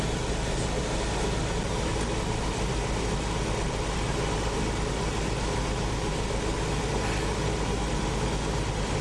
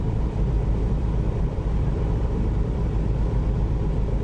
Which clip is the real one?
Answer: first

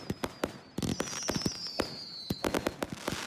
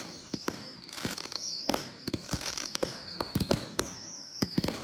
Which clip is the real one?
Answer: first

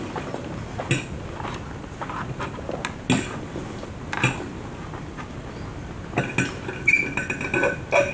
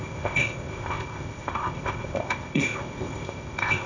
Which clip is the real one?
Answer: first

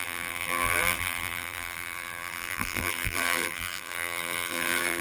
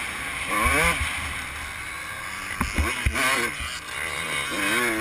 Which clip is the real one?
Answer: second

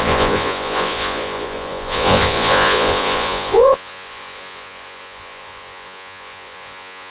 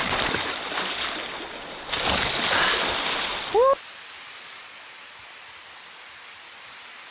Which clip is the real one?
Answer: second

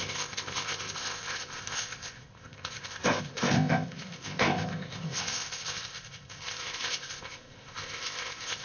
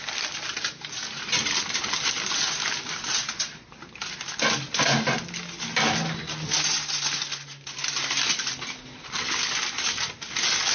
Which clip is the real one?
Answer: second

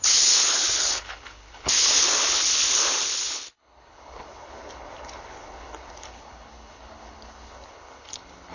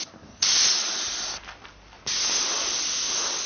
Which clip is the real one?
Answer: second